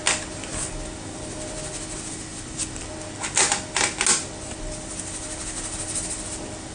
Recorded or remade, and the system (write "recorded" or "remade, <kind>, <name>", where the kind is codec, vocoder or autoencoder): recorded